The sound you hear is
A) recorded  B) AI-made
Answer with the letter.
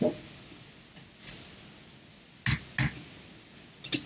A